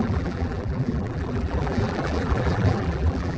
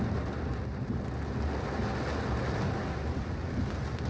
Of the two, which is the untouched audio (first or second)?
second